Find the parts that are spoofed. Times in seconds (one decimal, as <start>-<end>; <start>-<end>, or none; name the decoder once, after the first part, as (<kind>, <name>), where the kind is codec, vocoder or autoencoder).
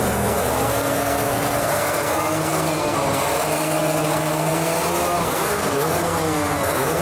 0.0-7.0 (codec, SNAC)